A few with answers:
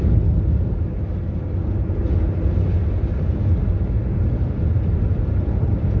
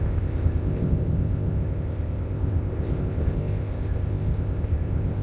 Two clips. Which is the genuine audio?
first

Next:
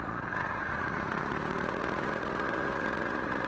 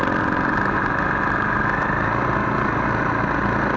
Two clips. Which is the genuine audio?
second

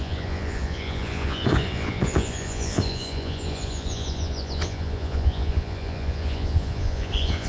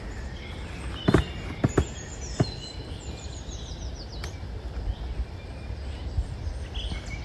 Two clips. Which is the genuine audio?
second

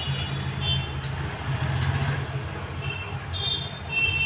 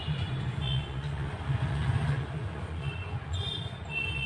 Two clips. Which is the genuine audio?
first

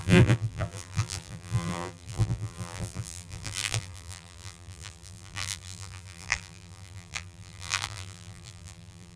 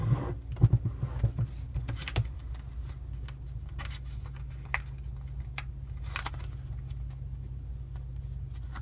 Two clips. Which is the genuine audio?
second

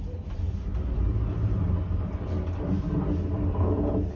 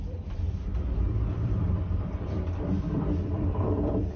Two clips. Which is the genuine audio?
first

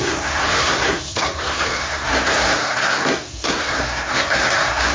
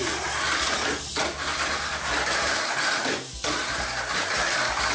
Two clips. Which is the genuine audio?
second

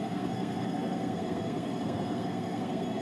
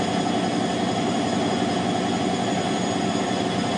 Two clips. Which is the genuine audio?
second